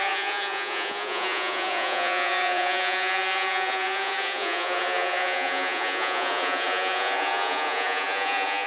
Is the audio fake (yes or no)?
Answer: yes